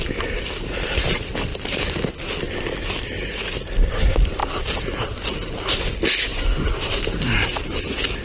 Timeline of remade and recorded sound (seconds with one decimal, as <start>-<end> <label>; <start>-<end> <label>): 0.0-1.5 recorded; 1.5-2.1 remade; 2.1-4.4 recorded; 4.4-5.6 remade; 5.6-6.3 recorded; 6.3-7.6 remade; 7.6-8.2 recorded